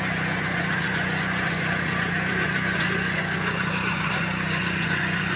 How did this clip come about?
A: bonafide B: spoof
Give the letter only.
B